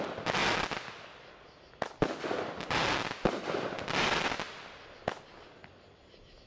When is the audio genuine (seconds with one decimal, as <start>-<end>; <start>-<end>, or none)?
0.0-6.5